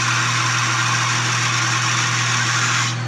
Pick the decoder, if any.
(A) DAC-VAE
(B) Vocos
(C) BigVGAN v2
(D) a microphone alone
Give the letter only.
D